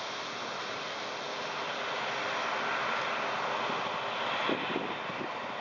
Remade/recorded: recorded